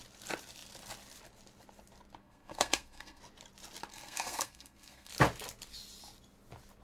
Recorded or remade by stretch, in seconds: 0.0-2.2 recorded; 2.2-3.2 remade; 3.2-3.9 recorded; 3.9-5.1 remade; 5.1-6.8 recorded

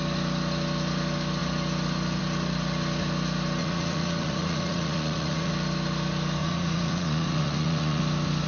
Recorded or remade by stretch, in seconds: 0.0-3.6 recorded; 3.6-5.5 remade; 5.5-6.4 recorded; 6.4-8.0 remade; 8.0-8.5 recorded